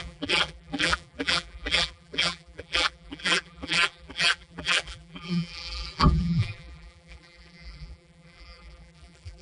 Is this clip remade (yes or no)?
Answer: yes